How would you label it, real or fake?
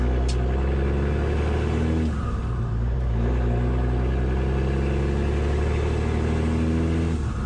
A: real